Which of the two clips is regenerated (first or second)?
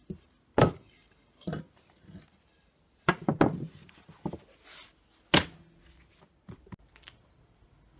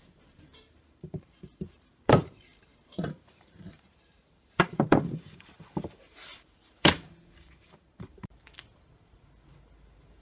second